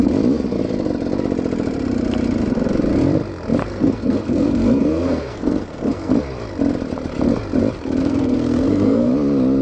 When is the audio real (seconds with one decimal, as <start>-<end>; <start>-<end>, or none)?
0.0-3.6; 6.1-8.0; 9.1-9.6